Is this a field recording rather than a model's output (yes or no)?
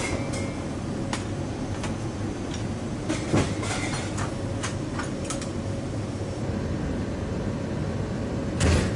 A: yes